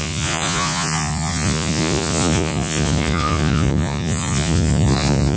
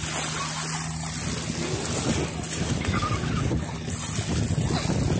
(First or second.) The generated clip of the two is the first